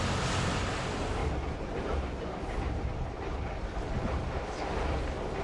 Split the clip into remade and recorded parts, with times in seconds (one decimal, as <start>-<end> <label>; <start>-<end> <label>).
0.0-1.2 recorded; 1.2-4.4 remade; 4.4-5.4 recorded